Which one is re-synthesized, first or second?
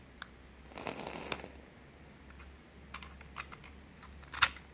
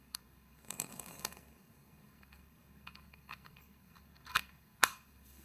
second